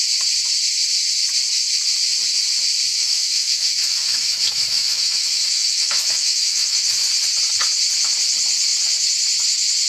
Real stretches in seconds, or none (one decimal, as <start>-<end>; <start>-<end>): 0.0-2.9; 6.8-9.9